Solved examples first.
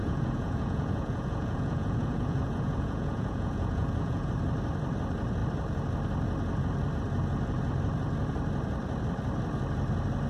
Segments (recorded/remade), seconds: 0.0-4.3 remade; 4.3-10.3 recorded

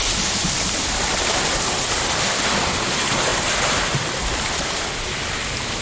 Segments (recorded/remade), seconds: 0.0-1.4 remade; 1.4-3.3 recorded; 3.3-4.7 remade; 4.7-5.8 recorded